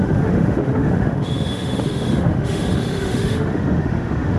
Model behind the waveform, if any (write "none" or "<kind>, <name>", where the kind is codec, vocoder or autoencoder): autoencoder, DAC-VAE